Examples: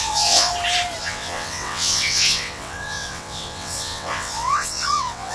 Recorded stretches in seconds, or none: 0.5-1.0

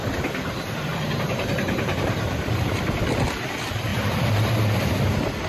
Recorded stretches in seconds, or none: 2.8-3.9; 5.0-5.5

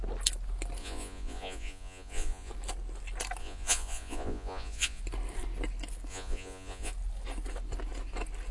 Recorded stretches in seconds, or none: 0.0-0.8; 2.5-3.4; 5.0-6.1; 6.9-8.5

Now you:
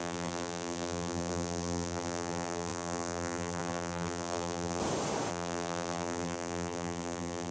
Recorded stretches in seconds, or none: 4.8-5.3

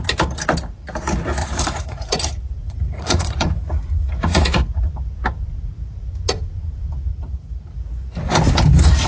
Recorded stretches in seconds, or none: 0.0-1.4; 2.2-2.6; 4.9-7.1; 7.7-9.1

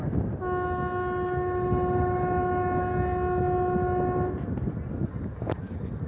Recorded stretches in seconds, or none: 0.0-6.1

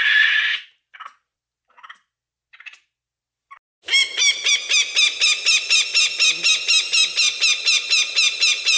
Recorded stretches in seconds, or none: 0.0-8.8